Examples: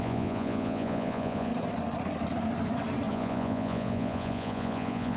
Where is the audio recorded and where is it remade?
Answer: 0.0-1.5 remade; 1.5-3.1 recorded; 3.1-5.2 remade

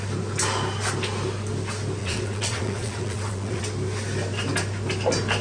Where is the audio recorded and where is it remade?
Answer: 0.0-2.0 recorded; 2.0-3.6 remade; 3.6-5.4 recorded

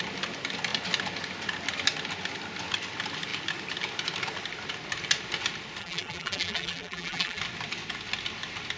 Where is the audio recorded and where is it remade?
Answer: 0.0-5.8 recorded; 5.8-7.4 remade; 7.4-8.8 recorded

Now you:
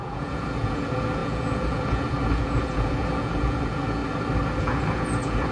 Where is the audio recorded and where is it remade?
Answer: 0.0-4.0 remade; 4.0-4.6 recorded; 4.6-5.5 remade